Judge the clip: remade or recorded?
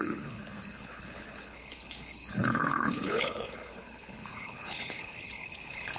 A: remade